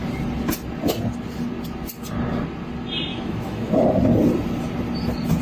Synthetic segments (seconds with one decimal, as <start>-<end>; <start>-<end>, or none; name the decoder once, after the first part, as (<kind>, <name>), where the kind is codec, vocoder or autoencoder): 3.1-3.7 (autoencoder, DAC-VAE)